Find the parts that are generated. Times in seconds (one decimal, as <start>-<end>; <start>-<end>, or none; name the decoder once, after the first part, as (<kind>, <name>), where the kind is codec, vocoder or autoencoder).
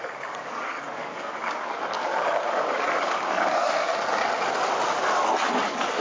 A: 0.0-3.9 (codec, DAC); 5.6-6.0